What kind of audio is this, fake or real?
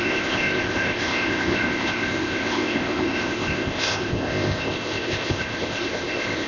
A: fake